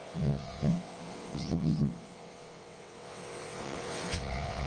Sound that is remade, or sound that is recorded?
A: remade